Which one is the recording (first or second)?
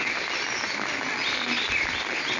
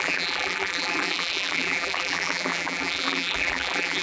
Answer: first